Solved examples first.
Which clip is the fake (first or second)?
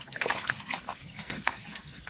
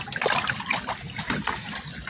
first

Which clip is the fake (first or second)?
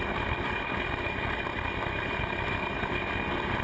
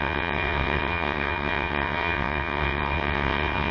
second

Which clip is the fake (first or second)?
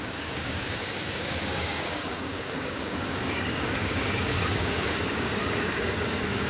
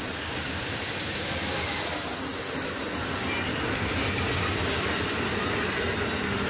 first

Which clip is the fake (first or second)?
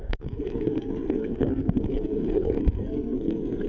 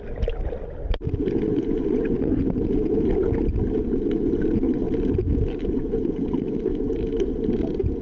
first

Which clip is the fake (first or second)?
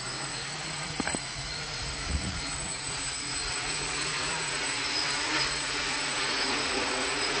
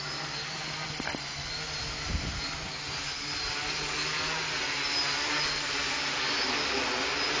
first